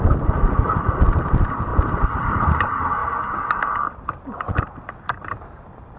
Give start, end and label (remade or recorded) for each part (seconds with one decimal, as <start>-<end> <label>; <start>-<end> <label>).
0.0-6.0 remade